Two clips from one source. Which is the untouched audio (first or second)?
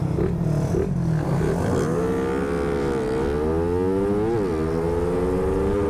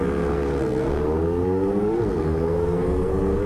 first